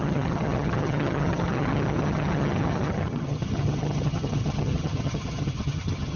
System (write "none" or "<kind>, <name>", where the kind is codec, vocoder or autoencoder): vocoder, HiFi-GAN